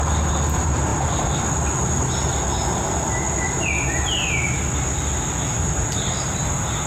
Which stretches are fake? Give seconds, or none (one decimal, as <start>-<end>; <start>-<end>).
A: none